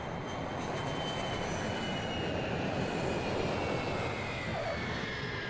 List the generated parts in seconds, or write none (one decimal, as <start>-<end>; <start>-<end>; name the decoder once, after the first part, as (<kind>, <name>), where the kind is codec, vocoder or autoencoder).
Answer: none